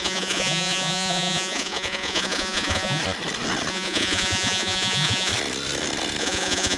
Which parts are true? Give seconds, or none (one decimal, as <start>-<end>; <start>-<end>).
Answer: 3.0-3.7; 5.3-6.2

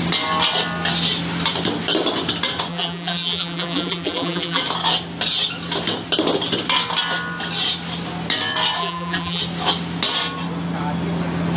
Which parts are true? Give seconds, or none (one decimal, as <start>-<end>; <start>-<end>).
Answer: 0.0-2.7; 4.6-8.8; 9.4-11.6

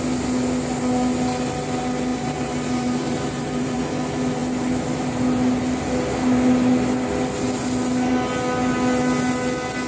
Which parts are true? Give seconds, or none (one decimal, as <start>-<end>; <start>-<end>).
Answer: 0.0-2.1; 3.8-9.9

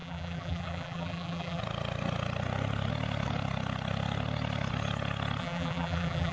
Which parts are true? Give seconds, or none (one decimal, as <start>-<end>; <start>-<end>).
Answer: 1.6-5.4

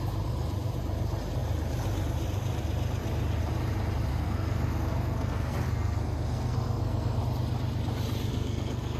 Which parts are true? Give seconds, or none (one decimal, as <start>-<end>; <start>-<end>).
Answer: 0.0-4.1; 7.2-8.3

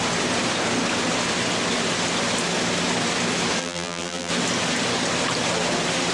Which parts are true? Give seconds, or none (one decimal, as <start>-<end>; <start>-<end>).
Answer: 0.0-3.6; 4.3-6.1